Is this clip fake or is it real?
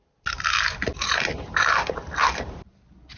real